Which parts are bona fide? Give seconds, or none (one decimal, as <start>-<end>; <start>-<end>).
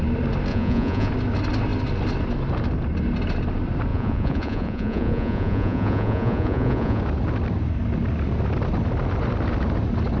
0.0-0.5; 1.1-3.9; 7.0-10.2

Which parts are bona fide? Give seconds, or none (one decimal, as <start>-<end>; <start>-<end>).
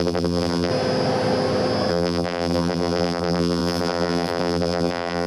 0.7-1.9